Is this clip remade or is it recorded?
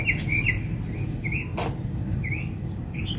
recorded